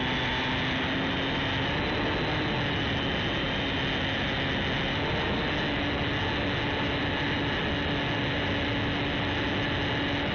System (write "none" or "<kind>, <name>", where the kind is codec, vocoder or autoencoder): none